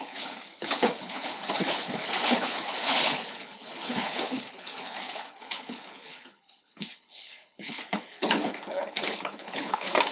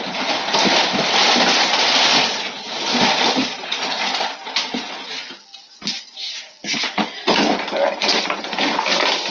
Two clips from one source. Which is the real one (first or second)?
second